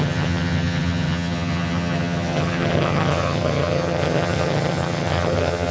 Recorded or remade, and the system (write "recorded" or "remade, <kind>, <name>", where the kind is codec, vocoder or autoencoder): remade, vocoder, HiFi-GAN